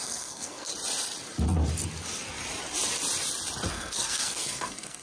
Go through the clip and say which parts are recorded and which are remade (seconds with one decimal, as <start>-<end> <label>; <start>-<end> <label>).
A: 0.0-0.7 remade; 0.7-3.7 recorded; 3.7-5.0 remade